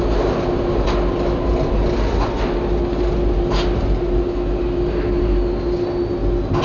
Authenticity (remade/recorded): recorded